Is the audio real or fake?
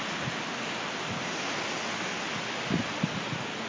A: real